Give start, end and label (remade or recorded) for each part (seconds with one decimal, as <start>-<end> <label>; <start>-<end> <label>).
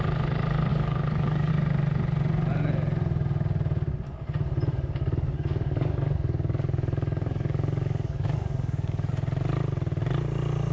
0.0-0.7 recorded; 0.7-1.5 remade; 1.5-4.7 recorded; 4.7-9.1 remade; 9.1-10.7 recorded